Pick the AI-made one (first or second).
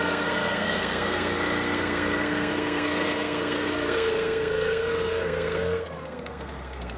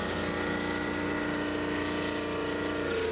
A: first